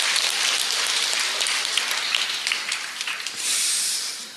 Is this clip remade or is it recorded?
remade